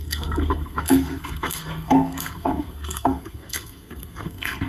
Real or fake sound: fake